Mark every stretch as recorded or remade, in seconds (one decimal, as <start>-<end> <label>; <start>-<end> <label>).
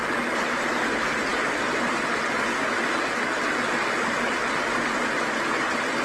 0.0-6.0 recorded